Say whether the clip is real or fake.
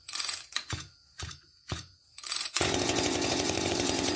fake